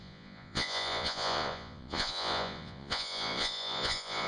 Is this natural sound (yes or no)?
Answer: no